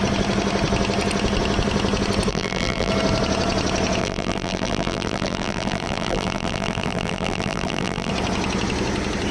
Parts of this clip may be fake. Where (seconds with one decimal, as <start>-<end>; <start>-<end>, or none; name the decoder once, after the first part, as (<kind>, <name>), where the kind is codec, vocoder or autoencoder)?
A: 2.3-2.9 (vocoder, BigVGAN v2); 4.0-8.1